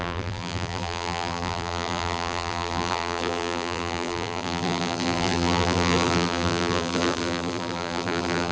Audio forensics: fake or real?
fake